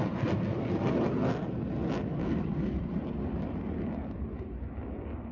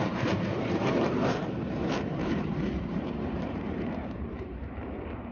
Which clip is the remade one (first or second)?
second